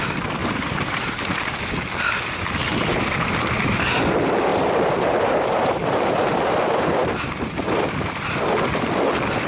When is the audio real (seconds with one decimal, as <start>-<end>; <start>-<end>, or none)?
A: 0.0-0.4; 1.1-4.5; 5.7-9.5